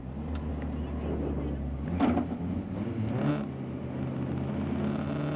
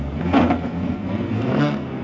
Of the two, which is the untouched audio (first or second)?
first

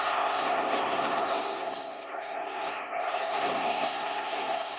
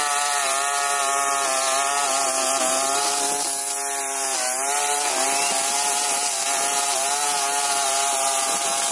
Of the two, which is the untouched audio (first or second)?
second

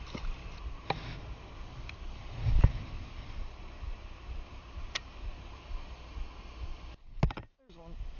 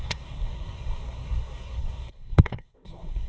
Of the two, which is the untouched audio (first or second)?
first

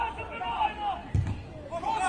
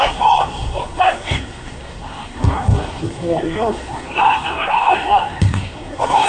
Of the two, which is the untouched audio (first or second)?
first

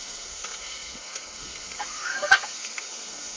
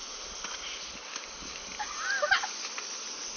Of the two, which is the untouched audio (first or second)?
second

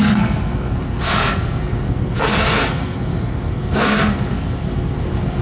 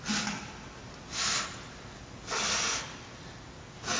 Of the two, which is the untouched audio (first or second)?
second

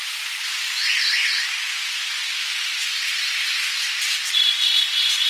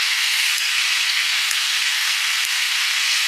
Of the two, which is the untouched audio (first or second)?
first